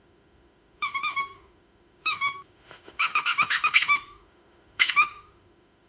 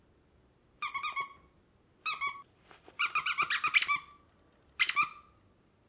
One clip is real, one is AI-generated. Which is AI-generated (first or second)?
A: first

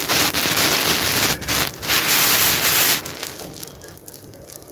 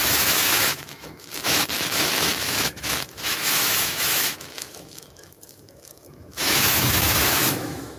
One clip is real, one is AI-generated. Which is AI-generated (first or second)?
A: second